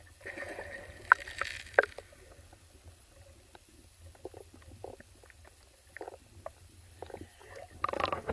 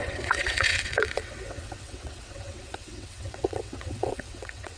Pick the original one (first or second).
first